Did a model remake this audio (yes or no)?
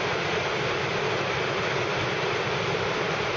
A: no